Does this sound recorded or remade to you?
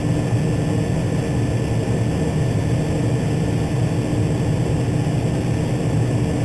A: recorded